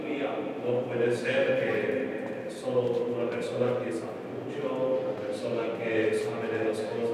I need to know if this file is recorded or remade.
recorded